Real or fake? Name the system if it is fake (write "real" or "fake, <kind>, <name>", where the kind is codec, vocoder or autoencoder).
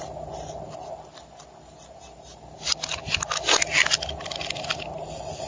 real